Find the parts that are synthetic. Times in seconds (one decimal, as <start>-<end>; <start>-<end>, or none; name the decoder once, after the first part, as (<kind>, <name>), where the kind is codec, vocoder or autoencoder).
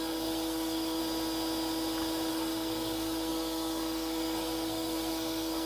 0.0-1.0 (codec, SNAC); 2.3-5.7